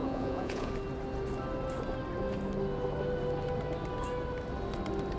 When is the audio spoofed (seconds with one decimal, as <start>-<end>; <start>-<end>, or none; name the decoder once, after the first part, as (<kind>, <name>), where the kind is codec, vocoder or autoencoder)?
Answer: 0.0-0.7 (vocoder, Vocos)